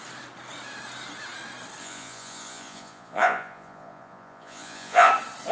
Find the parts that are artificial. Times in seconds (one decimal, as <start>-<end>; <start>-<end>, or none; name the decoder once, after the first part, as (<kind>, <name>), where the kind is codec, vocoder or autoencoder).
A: 1.8-5.1 (vocoder, Vocos)